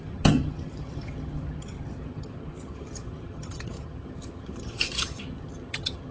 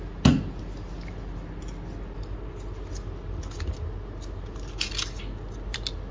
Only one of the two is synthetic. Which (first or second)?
first